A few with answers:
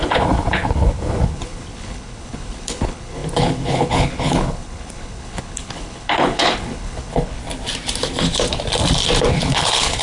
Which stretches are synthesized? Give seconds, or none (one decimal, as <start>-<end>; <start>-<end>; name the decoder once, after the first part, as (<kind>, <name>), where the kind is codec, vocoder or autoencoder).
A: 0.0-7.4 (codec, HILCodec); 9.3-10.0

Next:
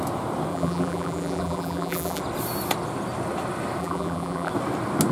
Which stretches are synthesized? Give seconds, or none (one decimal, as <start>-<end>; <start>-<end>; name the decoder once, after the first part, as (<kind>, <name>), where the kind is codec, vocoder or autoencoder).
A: 0.5-2.2 (vocoder, BigVGAN v2); 3.8-4.5

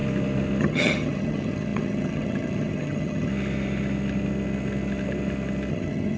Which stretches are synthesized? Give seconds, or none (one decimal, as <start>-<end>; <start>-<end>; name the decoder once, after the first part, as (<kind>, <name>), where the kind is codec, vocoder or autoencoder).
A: 0.6-3.3 (vocoder, HiFi-GAN); 5.7-6.2